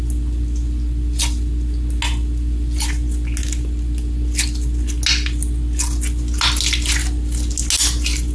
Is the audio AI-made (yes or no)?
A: no